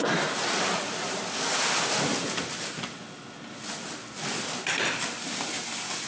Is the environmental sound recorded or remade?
recorded